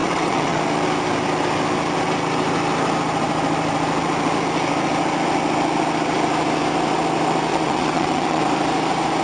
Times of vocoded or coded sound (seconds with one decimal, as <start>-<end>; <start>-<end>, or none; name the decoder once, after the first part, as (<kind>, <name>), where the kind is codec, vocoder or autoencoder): 0.0-0.6 (vocoder, WaveNeXt); 7.5-8.4